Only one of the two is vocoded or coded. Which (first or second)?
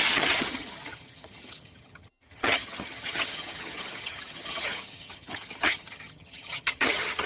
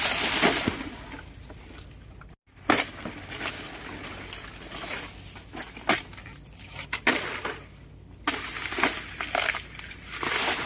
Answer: first